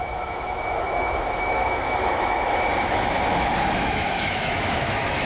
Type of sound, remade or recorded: remade